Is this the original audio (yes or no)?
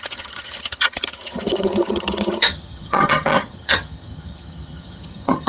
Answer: no